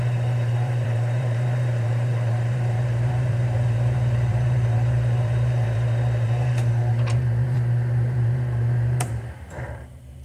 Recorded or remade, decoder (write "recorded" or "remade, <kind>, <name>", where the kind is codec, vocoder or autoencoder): remade, vocoder, BigVGAN v2